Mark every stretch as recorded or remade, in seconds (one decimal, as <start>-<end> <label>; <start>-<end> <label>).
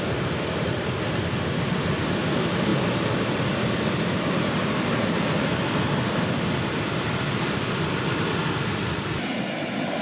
0.0-10.0 recorded